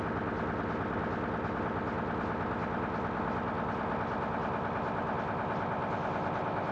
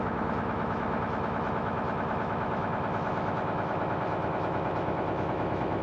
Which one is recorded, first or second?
first